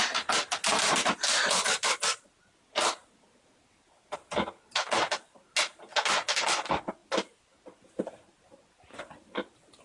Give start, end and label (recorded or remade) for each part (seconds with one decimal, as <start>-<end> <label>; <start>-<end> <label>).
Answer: 0.0-9.8 recorded